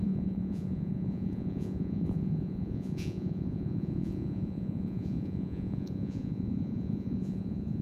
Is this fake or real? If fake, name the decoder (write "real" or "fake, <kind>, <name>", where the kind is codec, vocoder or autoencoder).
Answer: fake, vocoder, Vocos